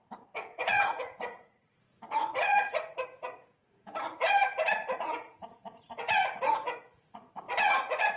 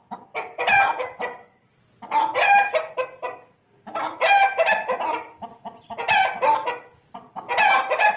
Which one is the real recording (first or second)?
second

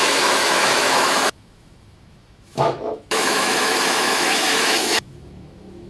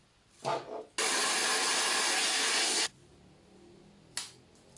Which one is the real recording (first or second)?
second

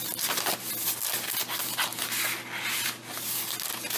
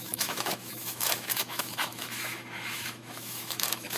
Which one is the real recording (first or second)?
first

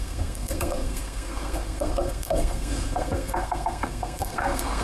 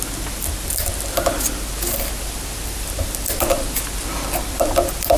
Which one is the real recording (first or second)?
second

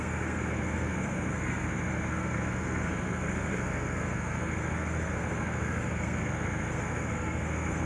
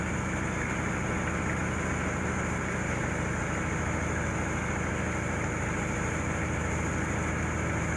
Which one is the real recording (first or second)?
second